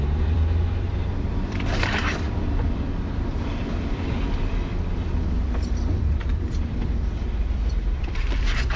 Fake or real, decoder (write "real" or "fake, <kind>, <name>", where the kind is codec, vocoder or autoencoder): fake, vocoder, BigVGAN v2